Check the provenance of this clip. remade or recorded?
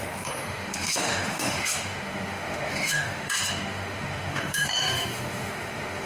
remade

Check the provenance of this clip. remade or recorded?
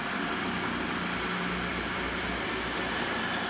recorded